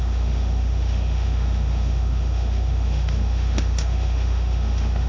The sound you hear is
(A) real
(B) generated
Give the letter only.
B